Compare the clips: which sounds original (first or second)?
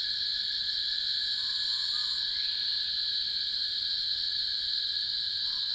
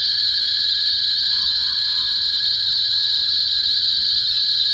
first